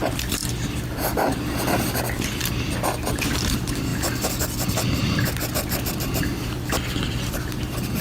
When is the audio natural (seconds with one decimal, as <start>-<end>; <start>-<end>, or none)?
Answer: 0.0-8.0